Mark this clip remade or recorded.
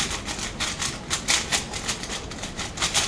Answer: recorded